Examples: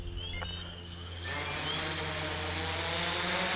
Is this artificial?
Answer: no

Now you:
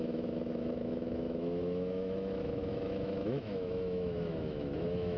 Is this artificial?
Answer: yes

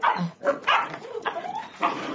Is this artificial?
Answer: yes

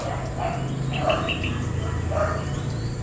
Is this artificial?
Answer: no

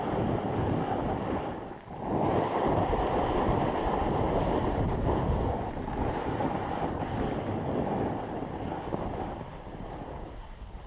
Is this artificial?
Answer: no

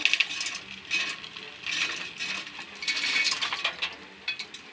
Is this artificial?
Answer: no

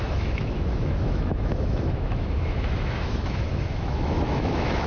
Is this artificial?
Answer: yes